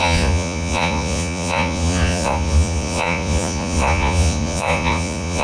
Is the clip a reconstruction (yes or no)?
yes